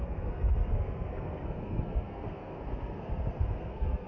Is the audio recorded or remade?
remade